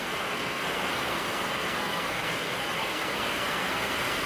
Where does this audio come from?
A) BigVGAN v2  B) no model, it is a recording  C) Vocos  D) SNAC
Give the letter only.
D